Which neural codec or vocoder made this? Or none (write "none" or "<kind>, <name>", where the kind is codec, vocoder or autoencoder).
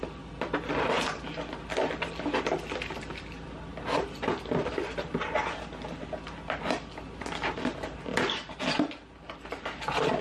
none